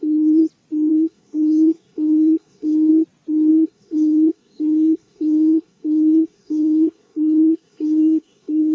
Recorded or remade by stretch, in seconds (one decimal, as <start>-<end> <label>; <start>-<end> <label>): 0.0-0.4 remade; 0.4-0.9 recorded; 0.9-2.9 remade; 2.9-3.5 recorded; 3.5-8.7 remade